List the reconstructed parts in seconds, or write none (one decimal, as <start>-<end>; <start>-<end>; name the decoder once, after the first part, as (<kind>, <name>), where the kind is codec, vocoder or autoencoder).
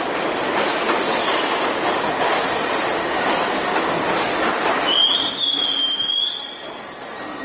none